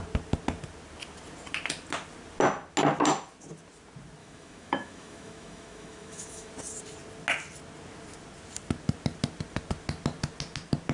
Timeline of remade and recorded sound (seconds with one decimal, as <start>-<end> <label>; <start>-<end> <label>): 0.0-4.2 recorded; 4.2-6.5 remade; 6.5-10.9 recorded